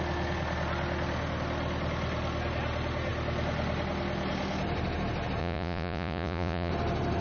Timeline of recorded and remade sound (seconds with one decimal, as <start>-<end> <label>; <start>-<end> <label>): 0.0-5.4 recorded; 5.4-6.7 remade; 6.7-7.2 recorded

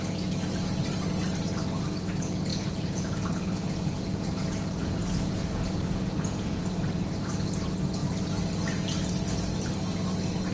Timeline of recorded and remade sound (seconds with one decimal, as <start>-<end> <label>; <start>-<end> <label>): 0.0-2.5 recorded; 2.5-6.6 remade; 6.6-10.5 recorded

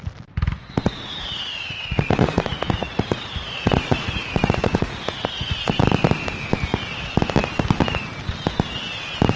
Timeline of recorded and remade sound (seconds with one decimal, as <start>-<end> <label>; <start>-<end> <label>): 0.0-0.6 recorded; 0.6-5.8 remade; 5.8-9.4 recorded

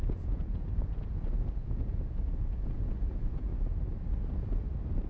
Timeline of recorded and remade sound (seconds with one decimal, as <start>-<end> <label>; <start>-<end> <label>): 0.0-3.5 remade; 3.5-5.1 recorded

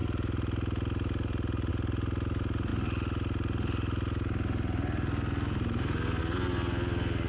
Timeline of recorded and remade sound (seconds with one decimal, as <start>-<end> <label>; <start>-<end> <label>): 0.0-7.3 recorded

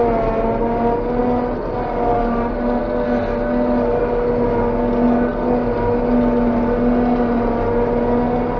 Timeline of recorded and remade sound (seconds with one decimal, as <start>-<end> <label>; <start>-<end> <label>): 0.0-8.6 recorded